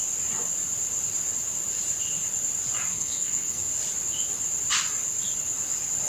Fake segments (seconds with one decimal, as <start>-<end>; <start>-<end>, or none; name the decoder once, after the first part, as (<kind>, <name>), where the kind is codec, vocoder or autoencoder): 2.9-3.7 (codec, SNAC)